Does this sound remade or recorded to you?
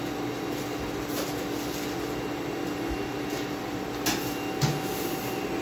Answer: recorded